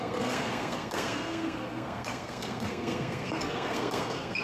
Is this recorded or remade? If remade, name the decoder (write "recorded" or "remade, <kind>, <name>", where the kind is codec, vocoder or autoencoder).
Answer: remade, codec, SNAC